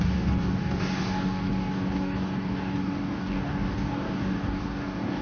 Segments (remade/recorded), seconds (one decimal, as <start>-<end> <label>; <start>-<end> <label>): 0.0-5.2 remade